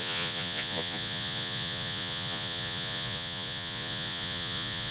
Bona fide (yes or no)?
no